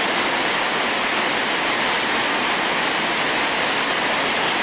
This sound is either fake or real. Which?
real